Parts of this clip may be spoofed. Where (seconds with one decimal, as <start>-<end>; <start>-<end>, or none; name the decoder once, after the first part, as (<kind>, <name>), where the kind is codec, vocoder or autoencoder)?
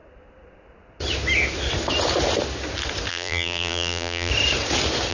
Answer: 3.1-4.3 (vocoder, BigVGAN v2)